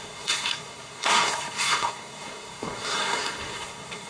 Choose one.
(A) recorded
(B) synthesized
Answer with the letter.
B